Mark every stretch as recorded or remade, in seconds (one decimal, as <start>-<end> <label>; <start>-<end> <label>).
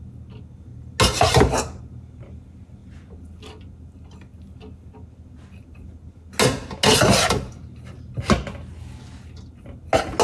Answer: 0.0-10.2 recorded